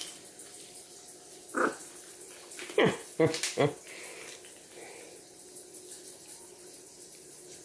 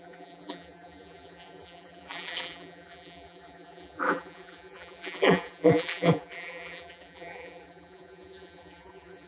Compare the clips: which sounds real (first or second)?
first